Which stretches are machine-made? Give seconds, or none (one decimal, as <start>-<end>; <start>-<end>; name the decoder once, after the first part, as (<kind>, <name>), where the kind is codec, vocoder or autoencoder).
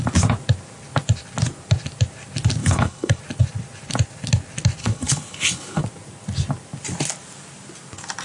2.6-3.2 (codec, HILCodec); 4.8-5.8